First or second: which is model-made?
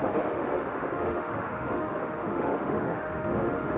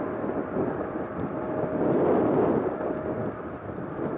first